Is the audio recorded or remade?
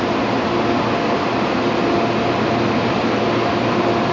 recorded